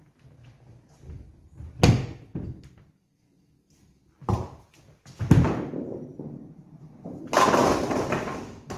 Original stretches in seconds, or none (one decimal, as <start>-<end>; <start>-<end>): 0.0-8.8